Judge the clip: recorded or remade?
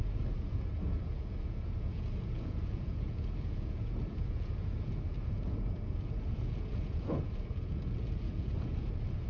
remade